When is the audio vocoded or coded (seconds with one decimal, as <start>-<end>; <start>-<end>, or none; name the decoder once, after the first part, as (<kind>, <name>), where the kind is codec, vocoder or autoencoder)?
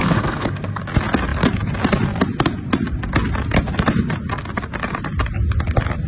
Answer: 0.0-0.8 (codec, SNAC)